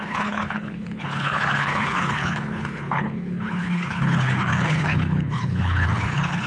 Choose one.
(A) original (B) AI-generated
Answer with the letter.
B